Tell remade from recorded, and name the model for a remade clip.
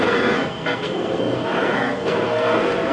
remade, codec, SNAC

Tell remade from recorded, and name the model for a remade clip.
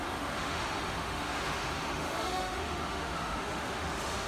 remade, autoencoder, DAC-VAE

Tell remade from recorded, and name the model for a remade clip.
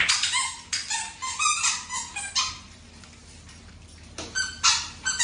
recorded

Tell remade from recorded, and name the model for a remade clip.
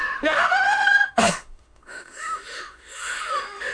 remade, autoencoder, DAC-VAE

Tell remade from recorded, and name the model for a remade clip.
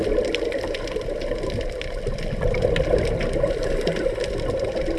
recorded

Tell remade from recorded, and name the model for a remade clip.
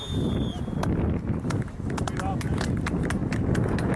recorded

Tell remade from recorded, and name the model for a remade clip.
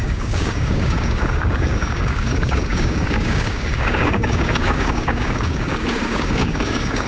remade, codec, DAC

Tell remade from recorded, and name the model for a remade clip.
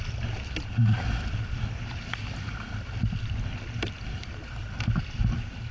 recorded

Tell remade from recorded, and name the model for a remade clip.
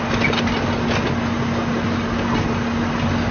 recorded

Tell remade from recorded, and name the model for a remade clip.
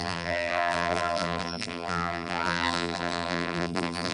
remade, vocoder, BigVGAN v2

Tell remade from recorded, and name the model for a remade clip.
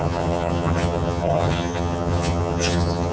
remade, vocoder, HiFi-GAN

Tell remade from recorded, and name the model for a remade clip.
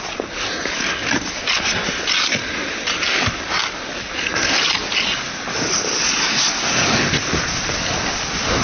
recorded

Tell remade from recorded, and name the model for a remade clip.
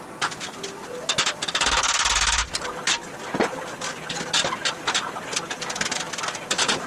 recorded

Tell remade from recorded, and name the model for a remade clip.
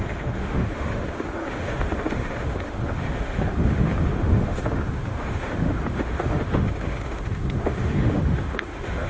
remade, autoencoder, DAC-VAE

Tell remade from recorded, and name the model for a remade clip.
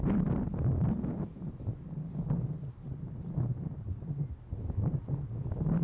recorded